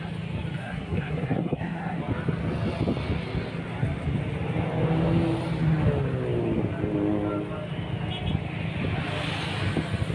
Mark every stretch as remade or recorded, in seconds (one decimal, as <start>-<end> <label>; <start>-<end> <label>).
0.0-0.6 recorded; 0.6-2.0 remade; 2.0-10.1 recorded